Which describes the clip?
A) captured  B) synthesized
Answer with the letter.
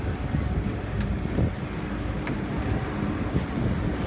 A